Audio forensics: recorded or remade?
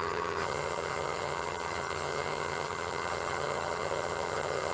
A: remade